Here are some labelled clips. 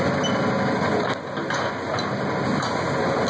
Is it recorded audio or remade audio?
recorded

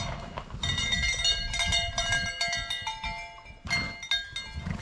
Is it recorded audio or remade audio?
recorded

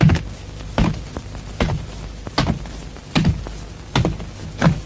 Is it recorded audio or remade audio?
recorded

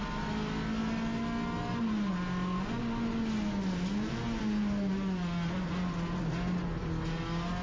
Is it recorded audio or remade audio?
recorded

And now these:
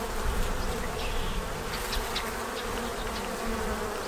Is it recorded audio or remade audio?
recorded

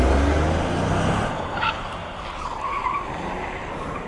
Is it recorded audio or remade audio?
recorded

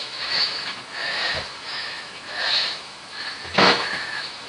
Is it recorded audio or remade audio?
remade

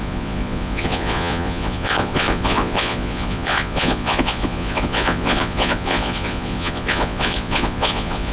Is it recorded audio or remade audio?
remade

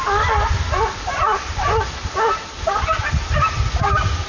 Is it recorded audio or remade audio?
recorded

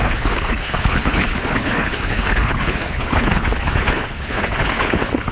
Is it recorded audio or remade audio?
remade